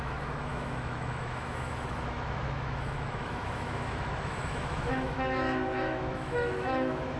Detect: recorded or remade remade